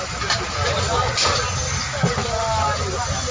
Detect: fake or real real